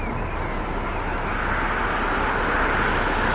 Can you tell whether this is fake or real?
real